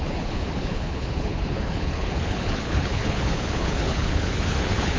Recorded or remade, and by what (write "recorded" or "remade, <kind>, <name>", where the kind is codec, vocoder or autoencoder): remade, codec, HILCodec